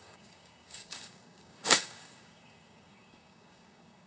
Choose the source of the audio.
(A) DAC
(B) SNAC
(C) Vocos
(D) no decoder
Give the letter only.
A